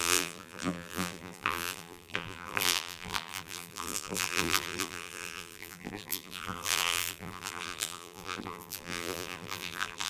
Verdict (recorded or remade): remade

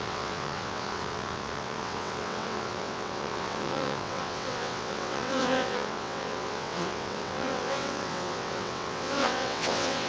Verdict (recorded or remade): remade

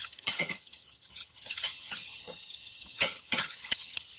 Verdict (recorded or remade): remade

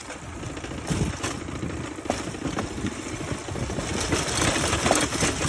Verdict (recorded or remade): recorded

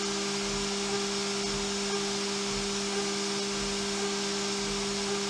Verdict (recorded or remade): recorded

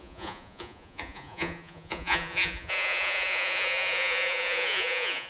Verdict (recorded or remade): remade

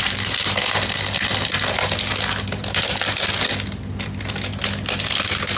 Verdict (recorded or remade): recorded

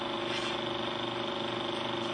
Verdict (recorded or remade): recorded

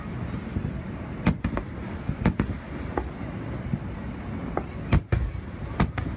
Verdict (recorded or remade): recorded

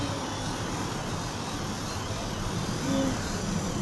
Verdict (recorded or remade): remade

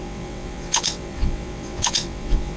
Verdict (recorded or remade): remade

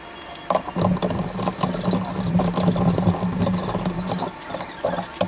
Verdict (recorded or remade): recorded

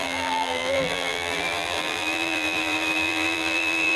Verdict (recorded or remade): remade